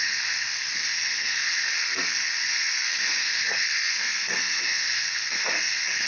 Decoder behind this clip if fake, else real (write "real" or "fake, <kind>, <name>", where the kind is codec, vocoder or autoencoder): fake, codec, SNAC